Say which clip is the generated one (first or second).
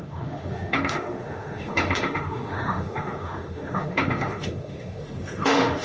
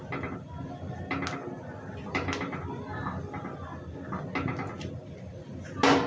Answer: first